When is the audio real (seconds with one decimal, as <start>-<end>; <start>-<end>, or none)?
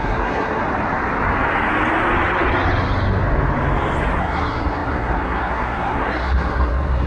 0.6-4.2